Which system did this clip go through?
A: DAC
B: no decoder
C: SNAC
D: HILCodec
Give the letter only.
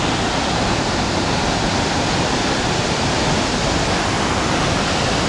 B